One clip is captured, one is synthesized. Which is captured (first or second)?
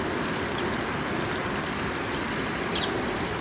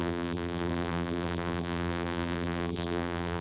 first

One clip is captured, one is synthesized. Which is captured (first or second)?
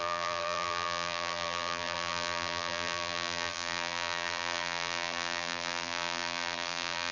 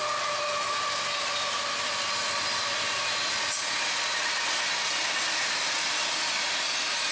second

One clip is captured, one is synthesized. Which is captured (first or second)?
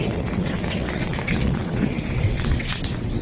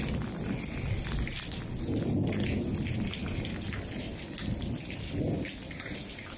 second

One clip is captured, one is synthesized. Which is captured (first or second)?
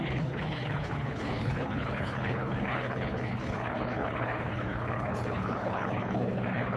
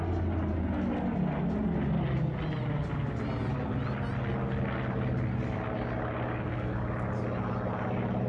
second